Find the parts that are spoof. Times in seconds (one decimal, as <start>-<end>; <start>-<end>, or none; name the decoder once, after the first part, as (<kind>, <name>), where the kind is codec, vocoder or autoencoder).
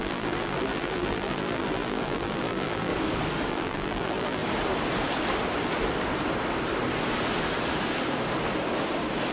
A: 0.0-2.9 (vocoder, BigVGAN v2); 3.5-4.4